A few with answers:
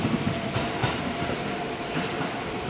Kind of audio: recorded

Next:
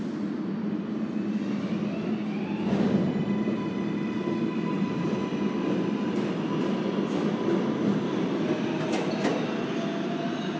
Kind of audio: recorded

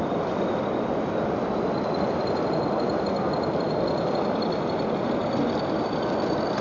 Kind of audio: recorded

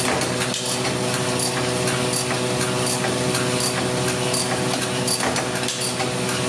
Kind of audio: recorded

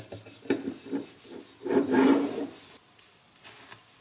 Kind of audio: recorded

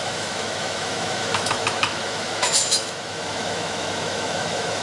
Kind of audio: remade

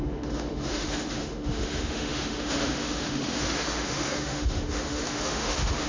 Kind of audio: remade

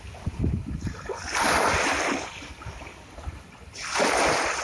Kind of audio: recorded